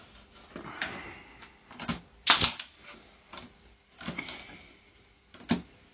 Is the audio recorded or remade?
recorded